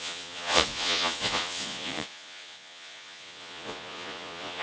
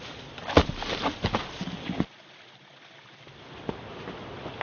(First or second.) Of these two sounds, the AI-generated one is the first